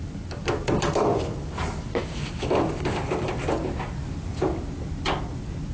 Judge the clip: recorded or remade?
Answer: recorded